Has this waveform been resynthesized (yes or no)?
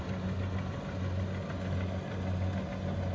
no